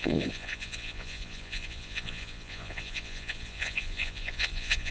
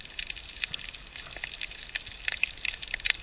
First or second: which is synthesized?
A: first